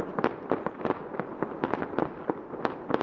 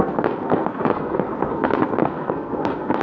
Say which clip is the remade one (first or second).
second